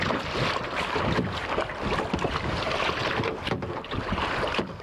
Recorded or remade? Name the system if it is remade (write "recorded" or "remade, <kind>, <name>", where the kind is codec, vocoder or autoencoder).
recorded